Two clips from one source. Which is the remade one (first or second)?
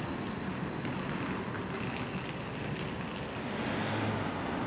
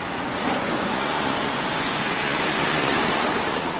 second